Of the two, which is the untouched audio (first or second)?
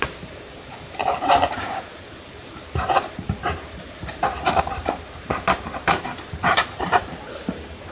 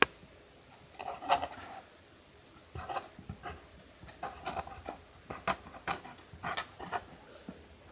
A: second